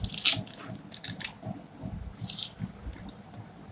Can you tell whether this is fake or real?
real